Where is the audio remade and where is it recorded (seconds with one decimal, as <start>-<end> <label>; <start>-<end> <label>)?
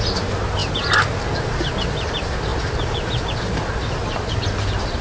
0.0-5.0 recorded